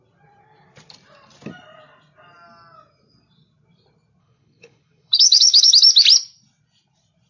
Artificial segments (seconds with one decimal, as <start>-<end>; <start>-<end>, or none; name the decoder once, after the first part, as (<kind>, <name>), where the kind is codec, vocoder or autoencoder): 4.2-5.7 (codec, HILCodec)